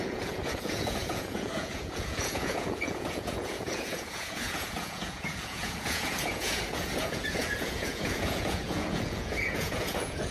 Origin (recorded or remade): remade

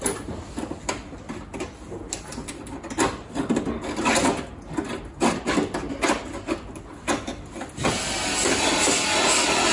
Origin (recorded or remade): recorded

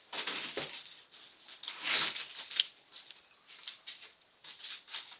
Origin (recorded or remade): recorded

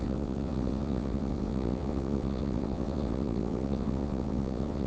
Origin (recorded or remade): remade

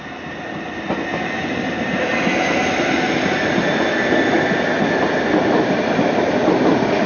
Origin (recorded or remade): recorded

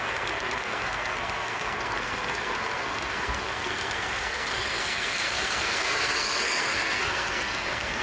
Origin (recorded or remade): remade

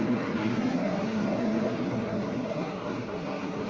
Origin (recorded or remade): remade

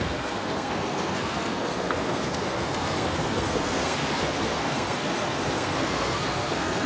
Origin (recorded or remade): remade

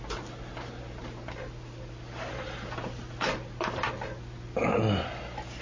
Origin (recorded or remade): recorded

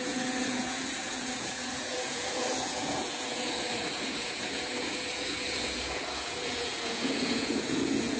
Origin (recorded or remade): remade